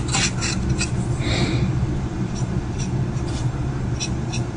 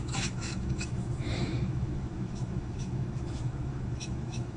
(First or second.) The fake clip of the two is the second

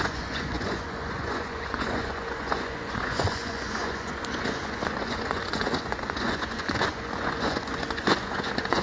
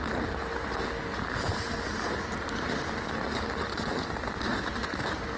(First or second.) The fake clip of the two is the first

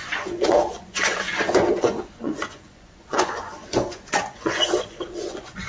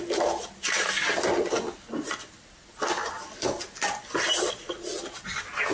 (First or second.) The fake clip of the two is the first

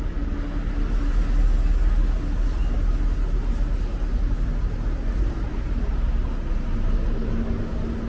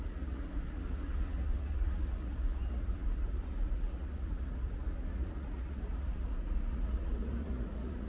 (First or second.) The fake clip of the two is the second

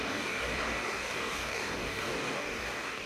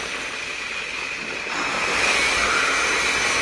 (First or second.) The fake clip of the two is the first